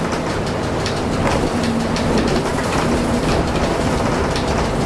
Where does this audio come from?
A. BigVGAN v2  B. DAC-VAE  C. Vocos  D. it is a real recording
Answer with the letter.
A